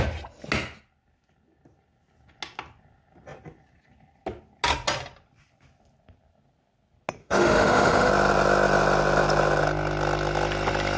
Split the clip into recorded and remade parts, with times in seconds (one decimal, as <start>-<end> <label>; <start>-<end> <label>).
0.0-7.2 recorded; 7.2-8.1 remade; 8.1-11.0 recorded